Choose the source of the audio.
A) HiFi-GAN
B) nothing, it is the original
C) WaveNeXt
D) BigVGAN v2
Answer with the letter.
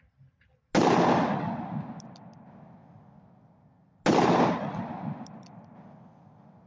B